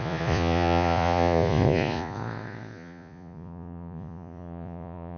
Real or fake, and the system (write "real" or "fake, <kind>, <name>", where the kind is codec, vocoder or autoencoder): fake, vocoder, Vocos